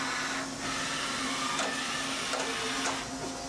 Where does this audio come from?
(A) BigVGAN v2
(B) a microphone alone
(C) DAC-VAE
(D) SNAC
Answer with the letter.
B